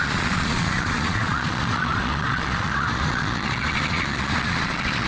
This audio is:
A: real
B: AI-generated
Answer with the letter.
B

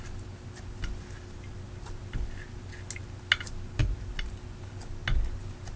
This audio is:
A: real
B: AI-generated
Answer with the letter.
A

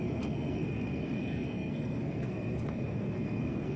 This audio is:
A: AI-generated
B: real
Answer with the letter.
A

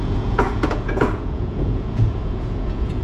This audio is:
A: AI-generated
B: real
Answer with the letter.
A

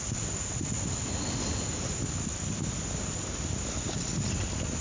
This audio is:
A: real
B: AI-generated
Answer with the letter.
A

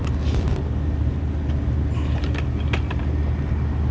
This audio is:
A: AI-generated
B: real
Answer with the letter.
B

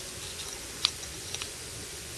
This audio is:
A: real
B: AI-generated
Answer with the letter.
B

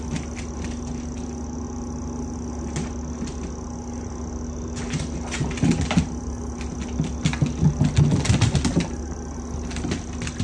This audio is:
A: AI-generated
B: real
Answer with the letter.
B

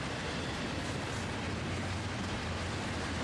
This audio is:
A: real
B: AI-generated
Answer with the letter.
A